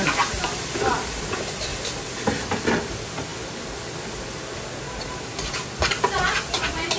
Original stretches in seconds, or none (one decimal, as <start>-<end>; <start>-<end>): 1.7-2.5; 3.3-5.0